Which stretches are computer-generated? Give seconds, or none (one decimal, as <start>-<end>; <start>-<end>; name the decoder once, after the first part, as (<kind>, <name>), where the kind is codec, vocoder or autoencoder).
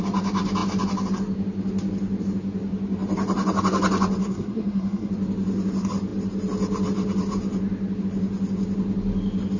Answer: 4.2-5.1 (codec, SNAC)